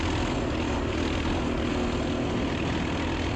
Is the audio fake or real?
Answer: real